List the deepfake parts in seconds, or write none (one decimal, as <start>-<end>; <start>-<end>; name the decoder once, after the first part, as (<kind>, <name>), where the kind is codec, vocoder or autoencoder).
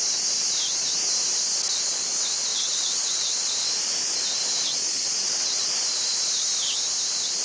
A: 2.5-3.5 (vocoder, WaveNeXt); 4.7-5.6